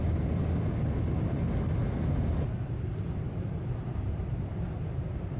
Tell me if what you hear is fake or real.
real